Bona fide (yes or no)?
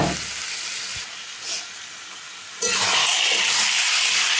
yes